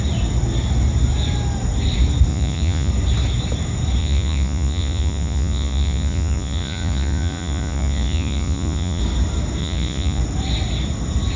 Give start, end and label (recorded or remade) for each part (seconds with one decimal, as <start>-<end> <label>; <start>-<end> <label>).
0.0-2.3 recorded; 2.3-2.9 remade; 2.9-4.0 recorded; 4.0-9.0 remade; 9.0-9.6 recorded; 9.6-10.2 remade; 10.2-11.4 recorded